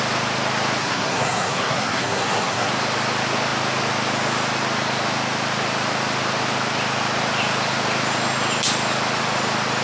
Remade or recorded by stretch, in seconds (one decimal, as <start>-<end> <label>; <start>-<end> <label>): 0.0-0.8 recorded; 0.8-2.7 remade; 2.7-9.8 recorded